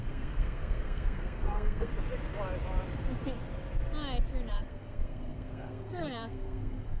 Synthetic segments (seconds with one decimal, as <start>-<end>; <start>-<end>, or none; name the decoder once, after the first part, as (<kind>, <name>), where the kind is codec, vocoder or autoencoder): 0.0-1.9 (codec, SNAC); 4.5-7.0